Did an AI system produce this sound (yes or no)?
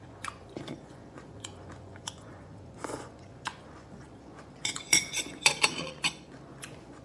yes